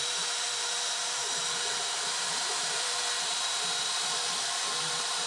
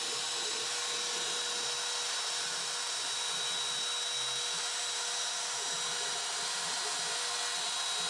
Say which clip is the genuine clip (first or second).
second